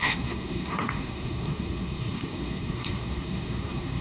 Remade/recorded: remade